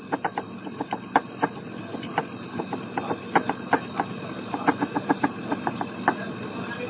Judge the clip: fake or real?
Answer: real